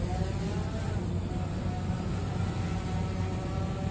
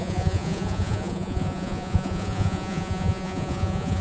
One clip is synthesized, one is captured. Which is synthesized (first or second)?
second